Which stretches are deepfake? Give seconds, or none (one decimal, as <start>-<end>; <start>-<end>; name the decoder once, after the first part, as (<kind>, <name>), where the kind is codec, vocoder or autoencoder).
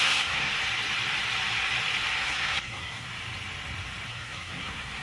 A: 0.0-0.5 (codec, SNAC); 2.1-3.1; 4.1-5.0